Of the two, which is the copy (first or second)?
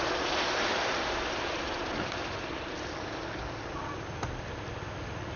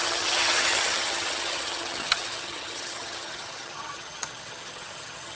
second